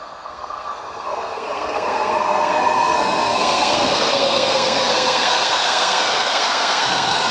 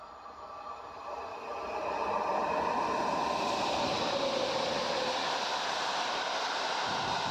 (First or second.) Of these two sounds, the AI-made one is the first